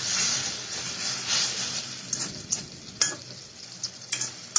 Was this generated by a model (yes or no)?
no